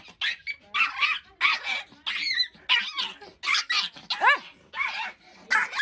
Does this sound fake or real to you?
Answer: real